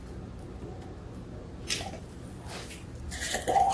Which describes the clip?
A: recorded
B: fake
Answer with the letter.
A